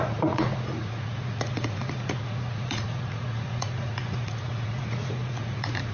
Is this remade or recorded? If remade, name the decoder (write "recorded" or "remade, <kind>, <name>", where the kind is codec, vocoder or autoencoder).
remade, vocoder, Vocos